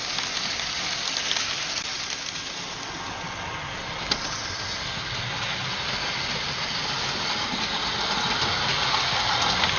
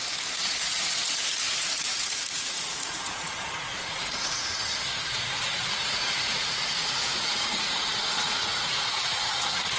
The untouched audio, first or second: first